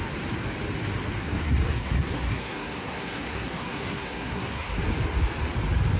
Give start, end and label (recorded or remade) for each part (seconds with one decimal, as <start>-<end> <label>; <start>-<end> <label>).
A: 0.0-1.2 recorded; 1.2-4.8 remade; 4.8-6.0 recorded

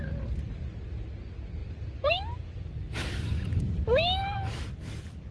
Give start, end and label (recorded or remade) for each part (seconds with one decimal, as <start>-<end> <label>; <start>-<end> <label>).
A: 0.0-1.6 recorded; 1.6-3.7 remade; 3.7-4.2 recorded; 4.2-5.3 remade